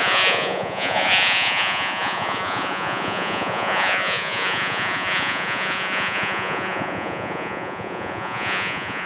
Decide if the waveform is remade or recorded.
remade